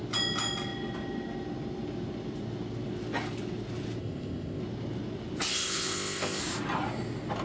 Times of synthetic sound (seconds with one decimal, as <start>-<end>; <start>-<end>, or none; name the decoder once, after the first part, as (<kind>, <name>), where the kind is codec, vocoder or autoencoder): 4.0-4.6 (codec, ZipCodec); 5.5-6.4